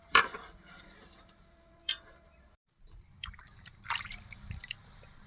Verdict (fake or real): fake